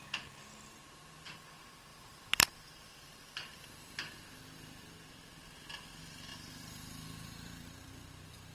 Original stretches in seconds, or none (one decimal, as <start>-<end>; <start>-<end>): 0.0-1.9; 3.0-6.3